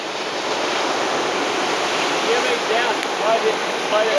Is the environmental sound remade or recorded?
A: recorded